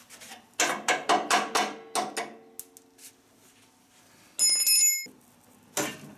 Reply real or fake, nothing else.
real